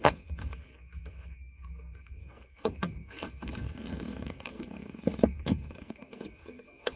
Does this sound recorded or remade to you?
remade